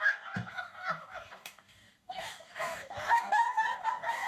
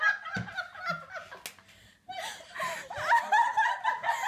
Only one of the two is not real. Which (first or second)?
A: first